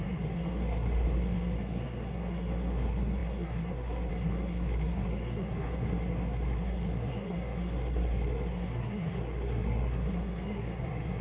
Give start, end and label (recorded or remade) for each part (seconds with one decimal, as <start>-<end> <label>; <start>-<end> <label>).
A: 0.0-11.2 remade